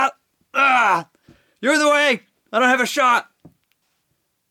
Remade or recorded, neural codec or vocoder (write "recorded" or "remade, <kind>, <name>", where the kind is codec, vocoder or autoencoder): recorded